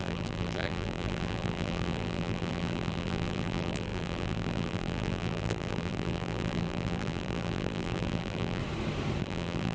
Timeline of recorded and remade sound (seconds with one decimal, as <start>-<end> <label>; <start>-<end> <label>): 0.0-8.6 remade; 8.6-9.2 recorded; 9.2-9.7 remade